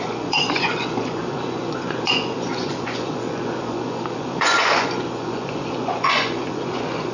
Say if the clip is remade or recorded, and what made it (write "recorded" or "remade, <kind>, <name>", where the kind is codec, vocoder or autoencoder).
remade, vocoder, Vocos